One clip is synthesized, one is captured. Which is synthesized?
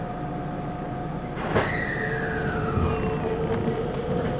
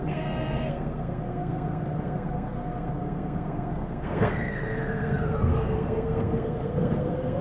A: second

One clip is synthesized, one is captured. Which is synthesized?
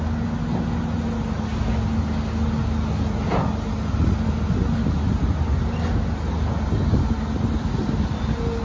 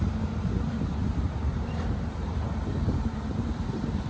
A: second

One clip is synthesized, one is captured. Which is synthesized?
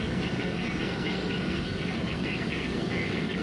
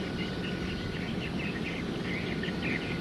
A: first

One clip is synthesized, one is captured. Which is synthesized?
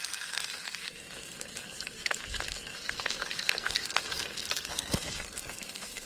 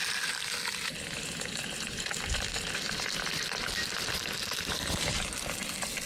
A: first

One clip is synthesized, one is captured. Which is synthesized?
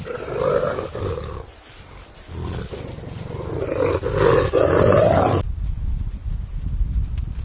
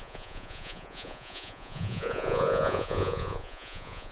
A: second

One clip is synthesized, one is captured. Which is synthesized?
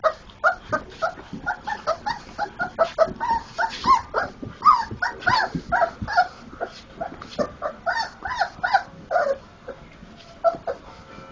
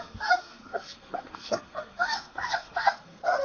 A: second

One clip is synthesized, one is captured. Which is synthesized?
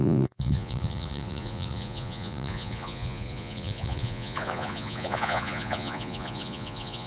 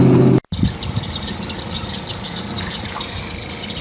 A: first